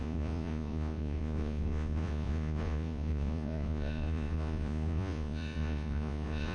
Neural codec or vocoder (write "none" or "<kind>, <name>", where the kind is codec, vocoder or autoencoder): vocoder, Vocos